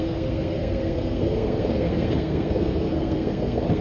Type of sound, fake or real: fake